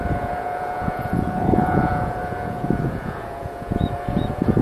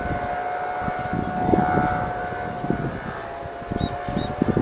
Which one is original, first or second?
second